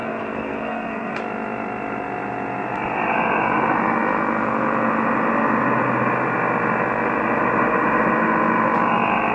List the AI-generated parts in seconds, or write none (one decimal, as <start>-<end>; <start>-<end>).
0.0-1.2